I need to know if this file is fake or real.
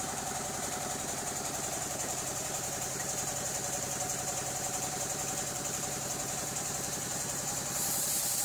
fake